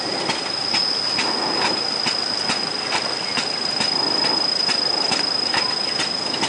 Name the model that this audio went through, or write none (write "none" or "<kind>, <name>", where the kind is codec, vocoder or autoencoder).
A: none